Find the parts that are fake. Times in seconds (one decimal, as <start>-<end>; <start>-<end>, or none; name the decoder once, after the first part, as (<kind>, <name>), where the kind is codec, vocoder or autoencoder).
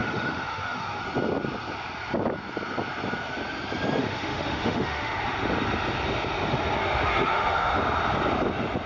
0.0-1.0 (autoencoder, DAC-VAE); 4.0-5.2; 6.8-7.8